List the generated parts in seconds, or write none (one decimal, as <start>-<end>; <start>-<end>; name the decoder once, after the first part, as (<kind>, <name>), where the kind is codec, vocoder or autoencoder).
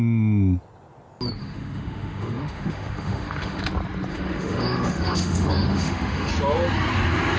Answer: 1.4-3.6 (autoencoder, DAC-VAE); 4.1-6.3